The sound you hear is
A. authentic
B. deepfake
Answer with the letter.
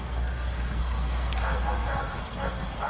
B